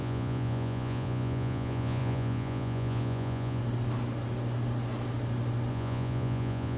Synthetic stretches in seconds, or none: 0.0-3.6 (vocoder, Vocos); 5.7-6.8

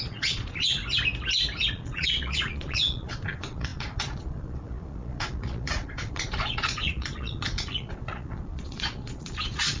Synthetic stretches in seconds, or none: 0.0-0.8 (vocoder, Vocos); 1.7-9.8

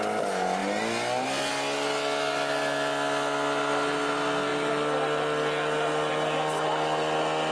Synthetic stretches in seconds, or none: none

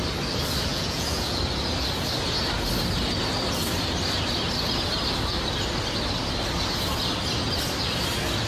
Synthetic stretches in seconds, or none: 0.7-1.4 (vocoder, Vocos)

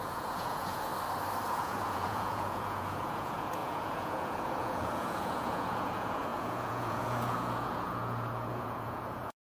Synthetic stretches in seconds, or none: 0.0-0.9 (vocoder, Vocos); 1.5-9.4

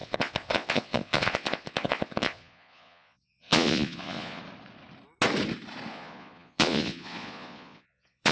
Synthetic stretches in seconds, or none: 0.0-4.4 (vocoder, Vocos); 5.9-8.3